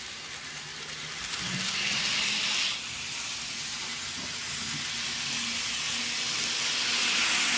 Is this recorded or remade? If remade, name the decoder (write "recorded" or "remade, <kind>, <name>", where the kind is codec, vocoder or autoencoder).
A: recorded